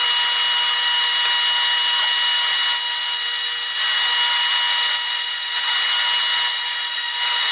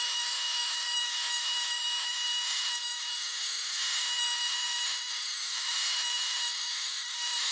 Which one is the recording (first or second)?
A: first